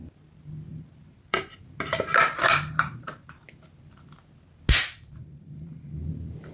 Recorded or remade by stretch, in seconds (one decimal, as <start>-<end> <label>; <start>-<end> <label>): 0.0-0.7 recorded; 0.7-3.4 remade; 3.4-4.8 recorded; 4.8-5.9 remade; 5.9-6.5 recorded